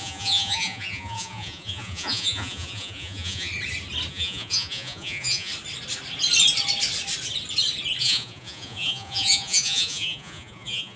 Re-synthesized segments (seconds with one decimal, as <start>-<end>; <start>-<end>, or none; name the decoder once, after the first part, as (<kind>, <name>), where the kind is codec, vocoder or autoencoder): 0.0-3.5 (vocoder, Vocos); 4.1-5.5; 8.0-11.0